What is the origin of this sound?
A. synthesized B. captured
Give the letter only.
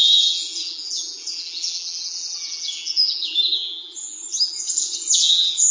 A